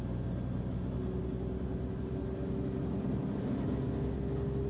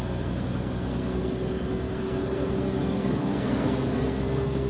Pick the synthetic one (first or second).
second